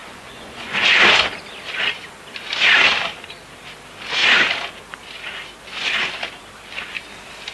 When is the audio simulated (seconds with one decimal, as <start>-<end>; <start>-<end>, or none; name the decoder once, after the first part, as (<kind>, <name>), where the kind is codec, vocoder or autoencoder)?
0.0-1.0 (vocoder, Vocos)